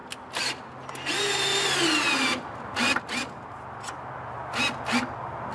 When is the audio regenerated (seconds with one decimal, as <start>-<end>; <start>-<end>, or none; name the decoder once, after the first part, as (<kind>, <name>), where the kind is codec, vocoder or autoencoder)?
none